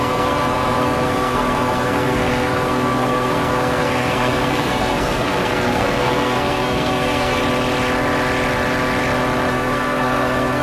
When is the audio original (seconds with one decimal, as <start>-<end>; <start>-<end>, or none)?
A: 7.4-9.5